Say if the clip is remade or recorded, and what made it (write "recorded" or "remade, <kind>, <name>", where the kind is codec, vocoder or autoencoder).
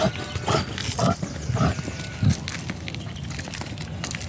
recorded